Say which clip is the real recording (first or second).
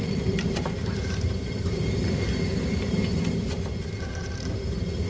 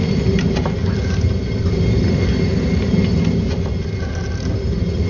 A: second